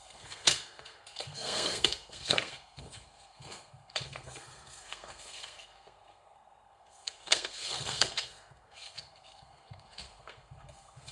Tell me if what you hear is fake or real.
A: fake